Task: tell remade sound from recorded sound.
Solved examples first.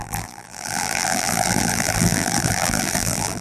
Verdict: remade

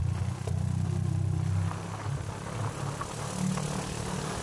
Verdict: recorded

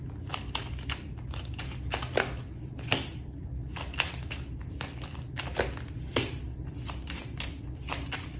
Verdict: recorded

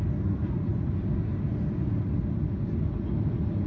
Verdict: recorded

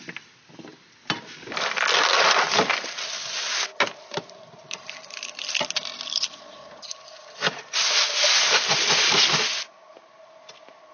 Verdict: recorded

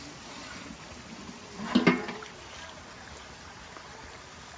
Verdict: recorded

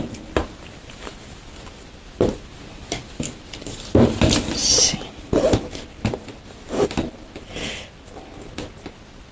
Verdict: recorded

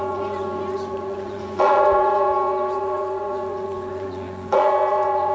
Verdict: remade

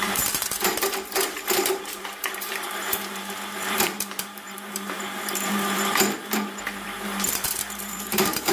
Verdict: remade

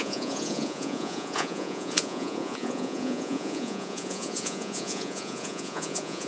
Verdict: remade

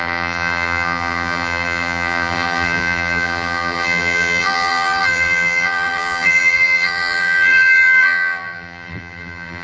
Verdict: remade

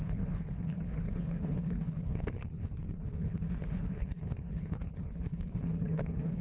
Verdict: remade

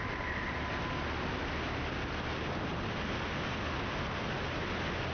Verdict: recorded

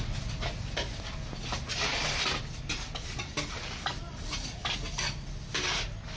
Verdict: recorded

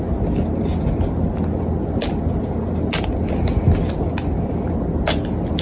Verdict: recorded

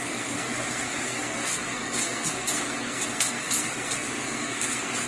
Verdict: remade